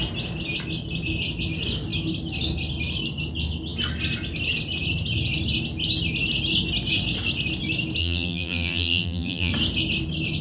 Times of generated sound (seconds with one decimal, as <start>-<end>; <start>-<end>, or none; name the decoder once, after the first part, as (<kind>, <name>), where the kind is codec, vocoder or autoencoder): 8.0-9.5 (vocoder, BigVGAN v2)